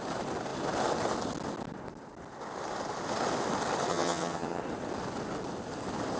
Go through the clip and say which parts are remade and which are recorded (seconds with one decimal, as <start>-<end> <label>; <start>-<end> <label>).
0.0-3.9 recorded; 3.9-4.6 remade; 4.6-6.2 recorded